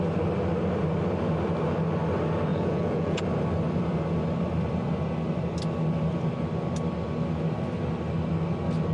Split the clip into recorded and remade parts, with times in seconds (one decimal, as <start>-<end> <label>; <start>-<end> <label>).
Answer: 0.0-2.5 recorded; 2.5-3.2 remade; 3.2-8.9 recorded